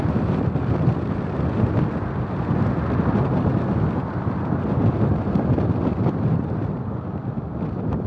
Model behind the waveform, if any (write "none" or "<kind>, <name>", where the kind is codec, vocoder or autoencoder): none